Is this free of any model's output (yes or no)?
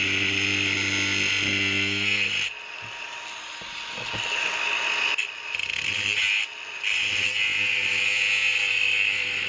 yes